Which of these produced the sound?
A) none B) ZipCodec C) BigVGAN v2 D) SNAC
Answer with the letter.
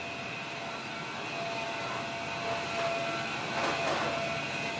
A